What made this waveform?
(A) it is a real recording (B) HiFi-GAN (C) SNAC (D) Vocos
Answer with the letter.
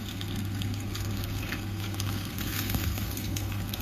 C